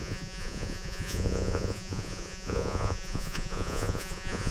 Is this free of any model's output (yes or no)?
no